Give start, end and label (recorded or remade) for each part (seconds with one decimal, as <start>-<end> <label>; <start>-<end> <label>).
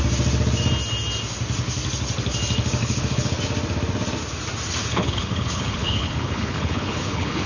0.0-2.8 recorded; 2.8-3.4 remade; 3.4-4.8 recorded; 4.8-7.5 remade